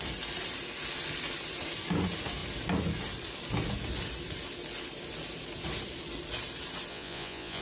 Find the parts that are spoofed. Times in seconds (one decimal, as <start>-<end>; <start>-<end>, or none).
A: 6.9-7.6